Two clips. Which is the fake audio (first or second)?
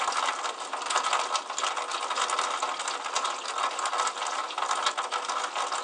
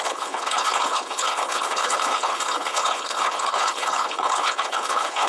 second